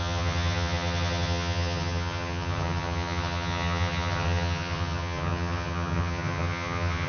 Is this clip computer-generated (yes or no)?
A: yes